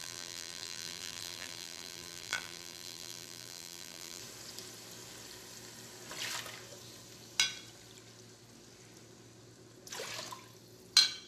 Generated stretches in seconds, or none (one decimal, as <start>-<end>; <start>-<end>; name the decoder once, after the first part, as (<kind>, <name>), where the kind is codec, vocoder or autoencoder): 0.0-4.2 (vocoder, BigVGAN v2)